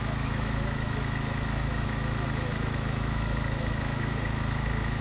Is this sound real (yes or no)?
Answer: no